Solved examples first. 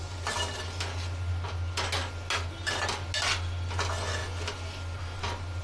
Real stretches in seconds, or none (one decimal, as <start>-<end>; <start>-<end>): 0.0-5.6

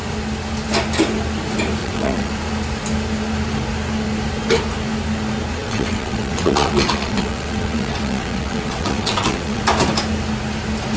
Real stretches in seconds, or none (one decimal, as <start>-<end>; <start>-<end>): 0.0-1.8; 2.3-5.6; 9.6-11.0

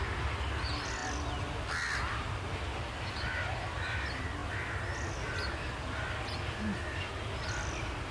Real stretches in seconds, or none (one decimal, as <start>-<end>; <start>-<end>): 0.0-8.1